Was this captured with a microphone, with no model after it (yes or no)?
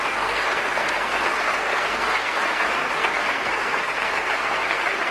no